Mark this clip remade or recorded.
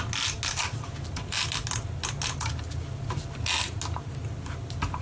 recorded